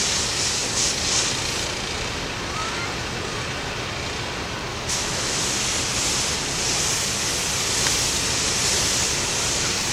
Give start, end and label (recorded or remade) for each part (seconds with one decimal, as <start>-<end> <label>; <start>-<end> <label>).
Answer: 0.0-4.7 recorded; 4.7-5.4 remade; 5.4-9.9 recorded